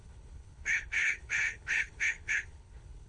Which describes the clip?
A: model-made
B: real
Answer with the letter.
A